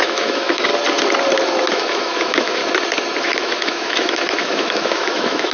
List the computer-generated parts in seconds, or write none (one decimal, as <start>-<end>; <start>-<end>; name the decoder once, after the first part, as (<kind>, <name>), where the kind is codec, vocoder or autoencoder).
0.0-0.7 (autoencoder, DAC-VAE); 1.7-2.6; 3.2-5.5